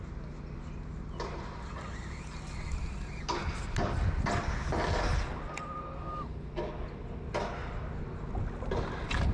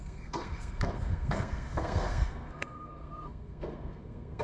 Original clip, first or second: first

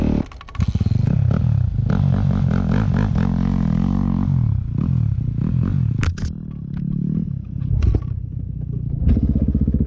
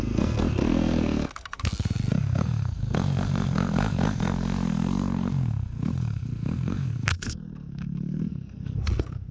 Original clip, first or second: first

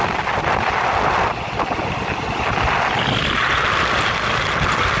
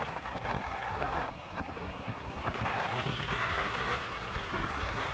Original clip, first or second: first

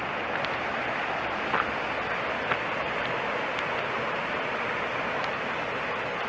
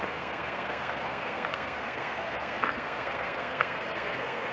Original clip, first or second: first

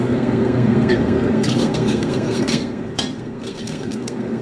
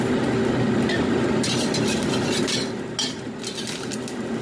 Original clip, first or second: second